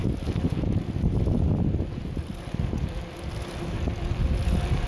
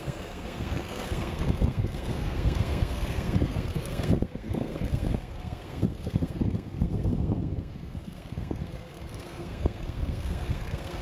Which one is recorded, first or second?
first